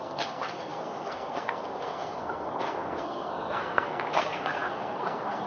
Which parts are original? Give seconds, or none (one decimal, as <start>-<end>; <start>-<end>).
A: none